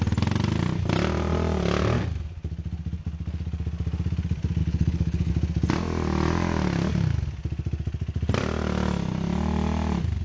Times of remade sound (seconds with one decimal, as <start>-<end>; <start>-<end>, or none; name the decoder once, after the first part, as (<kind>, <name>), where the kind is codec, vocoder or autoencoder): 4.6-5.3 (codec, HILCodec)